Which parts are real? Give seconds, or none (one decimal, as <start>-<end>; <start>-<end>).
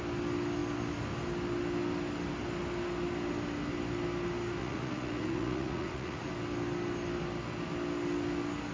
0.0-4.6; 6.3-8.7